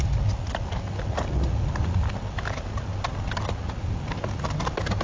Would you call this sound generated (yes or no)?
no